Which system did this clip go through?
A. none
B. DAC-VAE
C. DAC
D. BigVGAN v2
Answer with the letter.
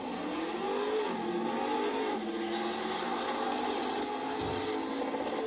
A